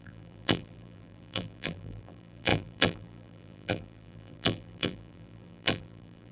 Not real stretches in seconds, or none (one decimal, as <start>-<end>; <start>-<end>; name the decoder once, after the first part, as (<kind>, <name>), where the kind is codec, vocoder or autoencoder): 0.0-6.3 (vocoder, BigVGAN v2)